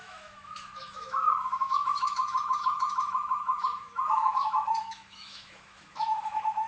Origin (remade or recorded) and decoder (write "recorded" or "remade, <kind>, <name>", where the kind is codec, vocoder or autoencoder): remade, autoencoder, DAC-VAE